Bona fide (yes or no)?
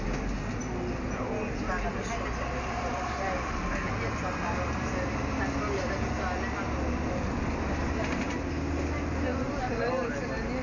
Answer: yes